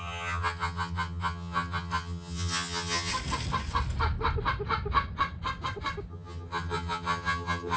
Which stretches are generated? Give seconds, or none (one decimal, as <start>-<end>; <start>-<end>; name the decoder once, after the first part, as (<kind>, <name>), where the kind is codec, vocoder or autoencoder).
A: 0.0-3.1 (vocoder, HiFi-GAN); 6.1-7.8

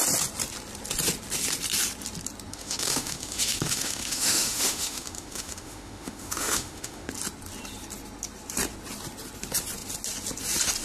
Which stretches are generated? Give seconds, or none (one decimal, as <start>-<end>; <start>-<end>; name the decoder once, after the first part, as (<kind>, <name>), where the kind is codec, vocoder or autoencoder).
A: 2.5-7.1 (autoencoder, DAC-VAE)

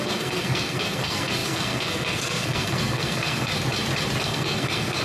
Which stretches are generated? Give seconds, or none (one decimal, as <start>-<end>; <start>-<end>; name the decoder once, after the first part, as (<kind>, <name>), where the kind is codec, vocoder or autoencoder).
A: 0.0-3.5 (codec, SNAC); 4.2-5.0

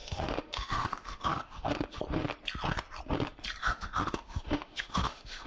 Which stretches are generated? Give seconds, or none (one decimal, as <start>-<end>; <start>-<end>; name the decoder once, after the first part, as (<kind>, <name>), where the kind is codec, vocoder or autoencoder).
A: 0.0-2.0 (autoencoder, DAC-VAE); 3.6-5.5

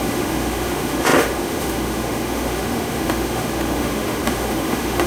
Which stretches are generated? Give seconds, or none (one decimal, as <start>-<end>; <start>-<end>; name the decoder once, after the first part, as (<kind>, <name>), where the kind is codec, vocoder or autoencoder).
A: 0.0-5.1 (autoencoder, DAC-VAE)